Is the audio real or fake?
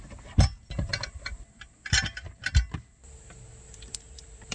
real